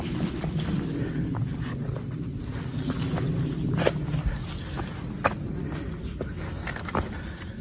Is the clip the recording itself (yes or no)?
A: yes